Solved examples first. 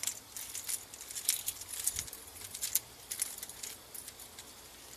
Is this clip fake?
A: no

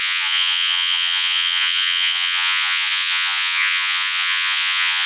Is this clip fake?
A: yes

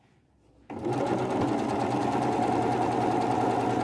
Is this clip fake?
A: no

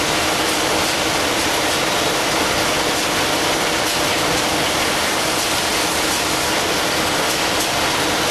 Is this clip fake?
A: no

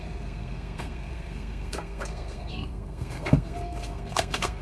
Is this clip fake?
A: yes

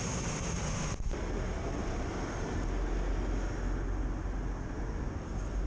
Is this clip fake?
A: no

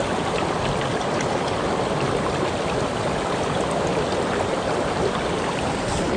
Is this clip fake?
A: no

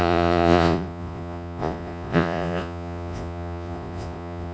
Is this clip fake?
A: yes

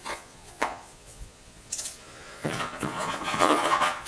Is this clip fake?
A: yes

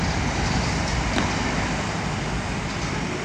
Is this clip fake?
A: no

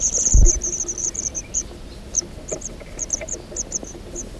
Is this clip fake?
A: no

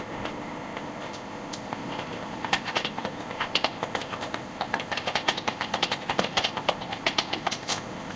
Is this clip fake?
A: yes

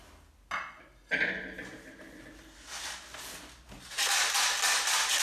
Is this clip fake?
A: no